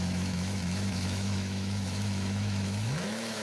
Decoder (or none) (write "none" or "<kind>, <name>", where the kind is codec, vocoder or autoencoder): autoencoder, DAC-VAE